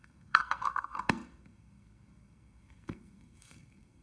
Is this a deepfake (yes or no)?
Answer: yes